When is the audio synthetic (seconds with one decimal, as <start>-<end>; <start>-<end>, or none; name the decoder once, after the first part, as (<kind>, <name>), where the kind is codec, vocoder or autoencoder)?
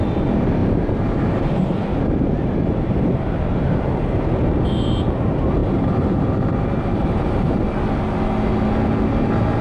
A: 0.6-4.2 (vocoder, BigVGAN v2); 5.6-7.6